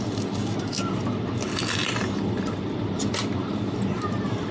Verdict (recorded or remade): recorded